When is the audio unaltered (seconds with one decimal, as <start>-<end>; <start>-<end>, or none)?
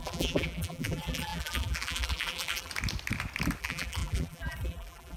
2.7-3.6